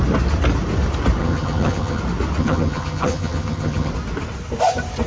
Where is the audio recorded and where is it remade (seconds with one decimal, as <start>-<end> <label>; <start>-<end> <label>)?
0.0-1.2 recorded; 1.2-2.0 remade; 2.0-2.4 recorded; 2.4-3.9 remade; 3.9-5.1 recorded